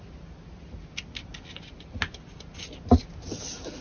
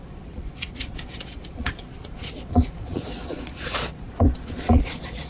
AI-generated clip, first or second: second